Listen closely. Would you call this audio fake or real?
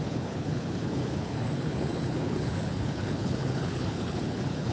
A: fake